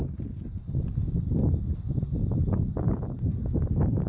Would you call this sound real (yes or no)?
yes